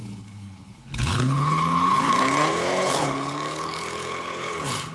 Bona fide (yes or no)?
no